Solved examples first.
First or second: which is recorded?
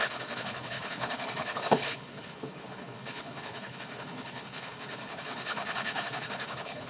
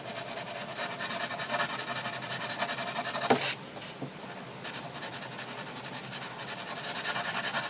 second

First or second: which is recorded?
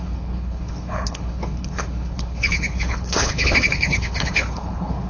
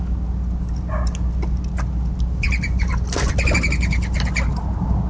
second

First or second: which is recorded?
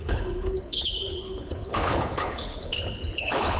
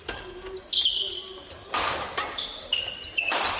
second